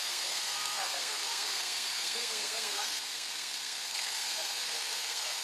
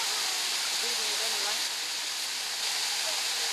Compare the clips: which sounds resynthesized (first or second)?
first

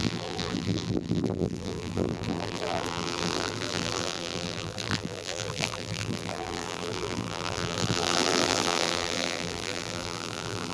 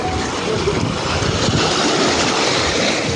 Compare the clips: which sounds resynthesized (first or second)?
first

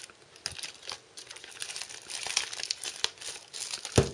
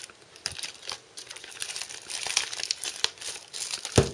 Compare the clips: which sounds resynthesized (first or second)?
second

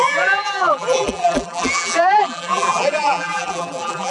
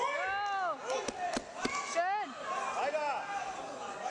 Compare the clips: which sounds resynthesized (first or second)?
first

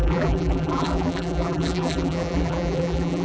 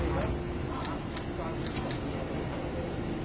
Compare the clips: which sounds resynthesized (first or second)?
first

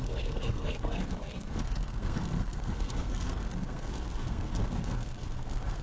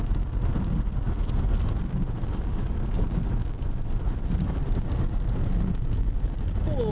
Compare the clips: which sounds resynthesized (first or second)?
first